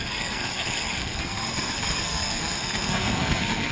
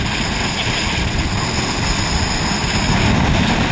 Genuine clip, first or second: second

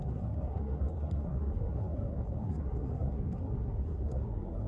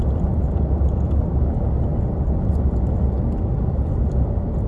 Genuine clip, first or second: second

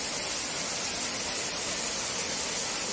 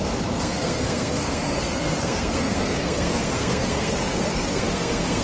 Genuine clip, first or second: first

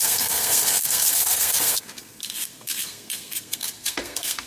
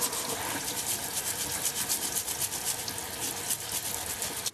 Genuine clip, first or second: second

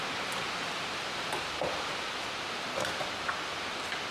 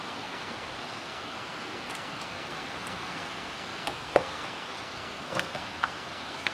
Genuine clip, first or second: first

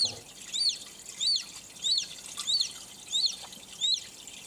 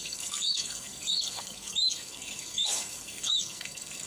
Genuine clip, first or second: first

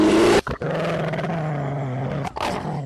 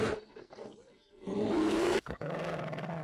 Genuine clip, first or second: first